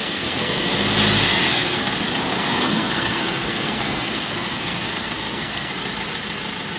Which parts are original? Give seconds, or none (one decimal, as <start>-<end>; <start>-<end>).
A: 0.7-1.3; 1.9-2.3; 5.7-6.8